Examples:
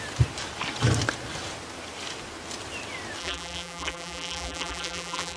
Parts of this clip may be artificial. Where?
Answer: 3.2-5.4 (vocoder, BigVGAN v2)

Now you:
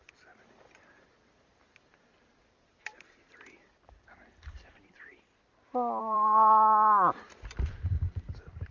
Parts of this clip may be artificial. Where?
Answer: 0.0-5.1 (vocoder, BigVGAN v2); 6.0-8.7

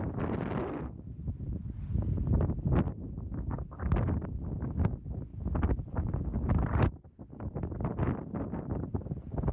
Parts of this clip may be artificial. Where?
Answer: none

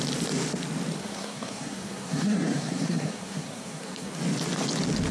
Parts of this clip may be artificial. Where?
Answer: 1.0-4.1 (codec, SNAC)